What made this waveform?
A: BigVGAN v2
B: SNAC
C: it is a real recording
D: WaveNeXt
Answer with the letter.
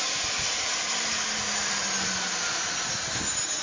C